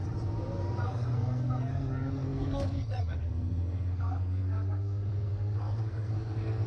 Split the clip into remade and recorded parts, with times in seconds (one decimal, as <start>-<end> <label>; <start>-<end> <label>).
0.0-0.8 recorded; 0.8-6.7 remade